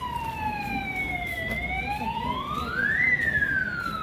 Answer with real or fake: real